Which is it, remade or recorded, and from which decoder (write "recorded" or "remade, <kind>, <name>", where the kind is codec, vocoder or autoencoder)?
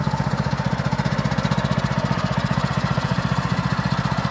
remade, vocoder, BigVGAN v2